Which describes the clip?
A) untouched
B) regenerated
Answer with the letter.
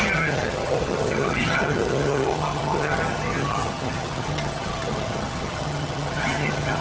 B